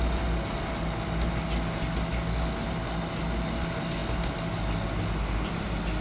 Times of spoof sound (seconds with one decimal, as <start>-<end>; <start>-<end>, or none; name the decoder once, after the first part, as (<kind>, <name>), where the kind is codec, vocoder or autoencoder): none